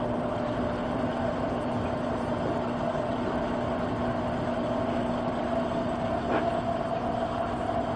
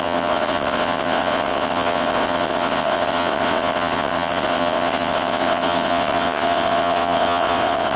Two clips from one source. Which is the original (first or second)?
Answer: first